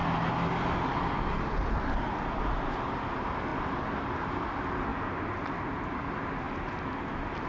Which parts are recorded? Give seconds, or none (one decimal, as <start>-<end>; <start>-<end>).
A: 0.0-7.5